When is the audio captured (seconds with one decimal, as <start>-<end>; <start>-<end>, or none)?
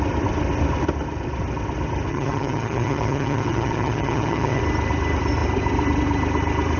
0.0-2.1; 4.6-6.8